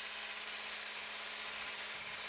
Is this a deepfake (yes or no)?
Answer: no